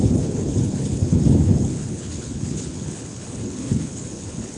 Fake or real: fake